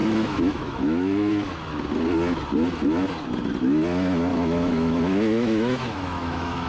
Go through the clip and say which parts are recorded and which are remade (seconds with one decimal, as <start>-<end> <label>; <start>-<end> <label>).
0.0-1.3 remade; 1.3-4.3 recorded; 4.3-6.7 remade